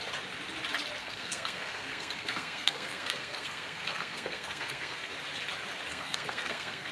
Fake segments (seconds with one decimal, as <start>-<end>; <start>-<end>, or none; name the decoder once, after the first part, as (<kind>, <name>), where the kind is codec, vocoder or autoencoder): 1.0-5.1 (codec, SNAC); 5.9-6.9